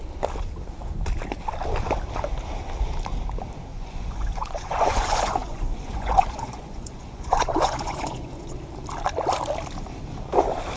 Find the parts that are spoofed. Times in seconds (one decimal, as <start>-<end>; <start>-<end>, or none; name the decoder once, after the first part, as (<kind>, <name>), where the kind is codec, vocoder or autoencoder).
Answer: 3.7-8.6 (vocoder, Vocos)